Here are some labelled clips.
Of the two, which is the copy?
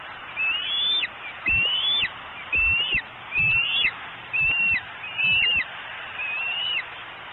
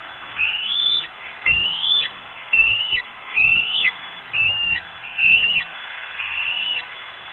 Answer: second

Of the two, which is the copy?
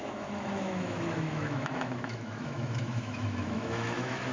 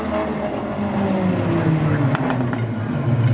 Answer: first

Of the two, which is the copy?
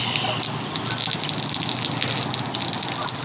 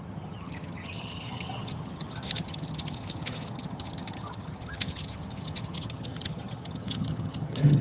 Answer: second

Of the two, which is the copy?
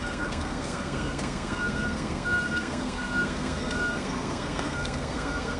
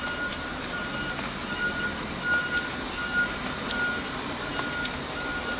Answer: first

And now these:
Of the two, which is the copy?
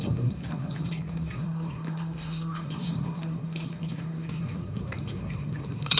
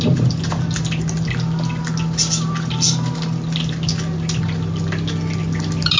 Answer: first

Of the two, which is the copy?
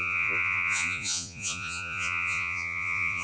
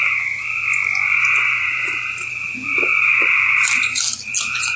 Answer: first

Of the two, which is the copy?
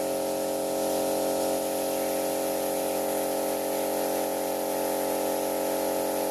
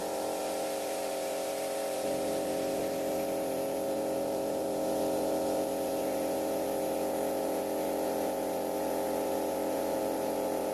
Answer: second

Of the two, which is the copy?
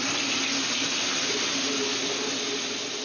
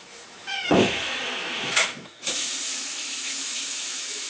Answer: second